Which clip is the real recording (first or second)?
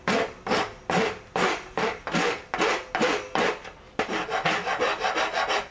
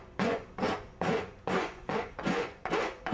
first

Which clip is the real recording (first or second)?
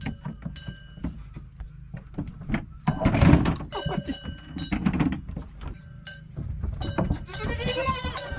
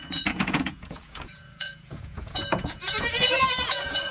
first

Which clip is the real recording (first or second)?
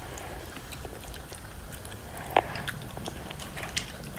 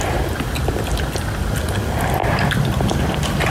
second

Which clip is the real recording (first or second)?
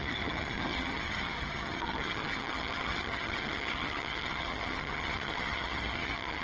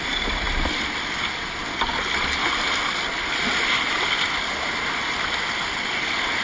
second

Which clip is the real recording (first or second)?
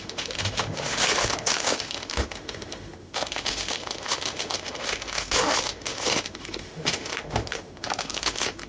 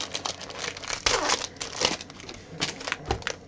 second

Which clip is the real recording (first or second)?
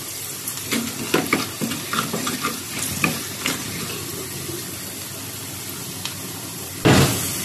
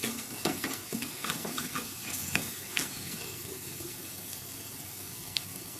first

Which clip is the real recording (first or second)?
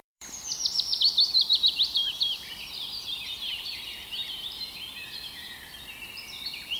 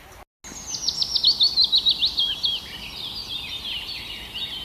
second